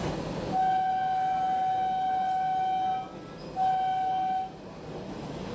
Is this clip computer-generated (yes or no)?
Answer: no